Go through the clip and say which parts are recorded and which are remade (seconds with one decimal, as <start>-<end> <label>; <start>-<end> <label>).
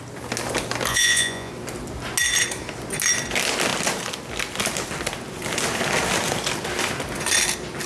0.0-0.9 recorded; 0.9-1.5 remade; 1.5-7.9 recorded